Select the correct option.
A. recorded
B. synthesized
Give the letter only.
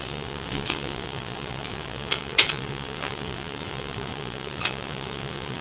B